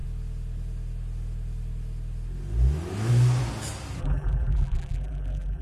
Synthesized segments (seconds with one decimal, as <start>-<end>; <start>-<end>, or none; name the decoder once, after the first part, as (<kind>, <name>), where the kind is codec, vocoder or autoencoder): 4.0-5.6 (vocoder, BigVGAN v2)